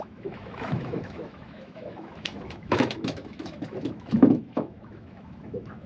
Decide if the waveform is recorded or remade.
remade